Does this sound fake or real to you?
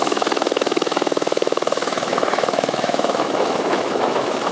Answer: fake